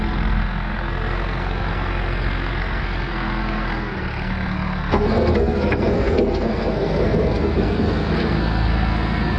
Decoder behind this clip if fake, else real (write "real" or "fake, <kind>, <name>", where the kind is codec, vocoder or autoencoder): fake, codec, SNAC